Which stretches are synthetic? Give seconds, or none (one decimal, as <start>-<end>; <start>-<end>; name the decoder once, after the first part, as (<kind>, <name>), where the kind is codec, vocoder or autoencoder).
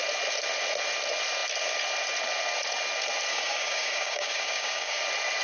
3.3-5.0 (codec, DAC)